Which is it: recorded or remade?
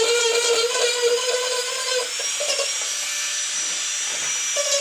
recorded